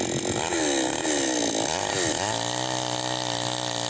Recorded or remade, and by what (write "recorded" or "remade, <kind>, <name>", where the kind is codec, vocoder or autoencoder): recorded